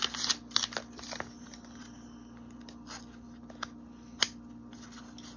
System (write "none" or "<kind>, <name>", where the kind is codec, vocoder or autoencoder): none